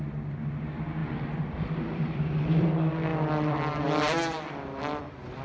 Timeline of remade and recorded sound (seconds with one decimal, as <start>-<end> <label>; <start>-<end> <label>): 0.0-1.0 recorded; 1.0-2.7 remade; 2.7-3.1 recorded; 3.1-5.0 remade; 5.0-5.4 recorded